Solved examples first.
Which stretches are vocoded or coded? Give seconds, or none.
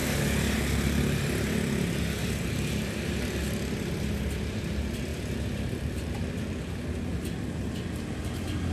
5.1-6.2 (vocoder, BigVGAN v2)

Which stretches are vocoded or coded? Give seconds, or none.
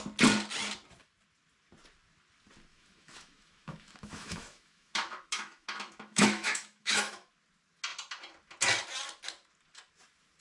2.7-7.3 (autoencoder, DAC-VAE)